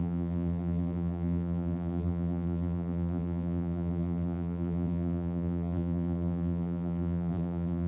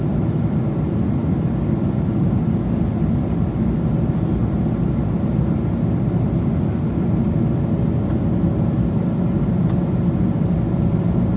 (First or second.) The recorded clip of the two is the second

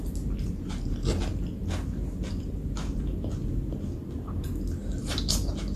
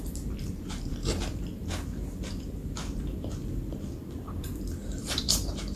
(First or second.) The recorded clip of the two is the first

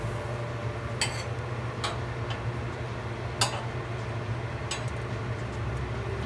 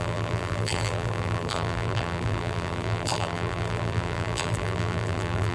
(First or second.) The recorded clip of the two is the first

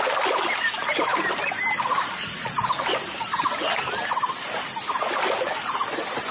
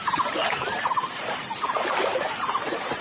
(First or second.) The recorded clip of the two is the first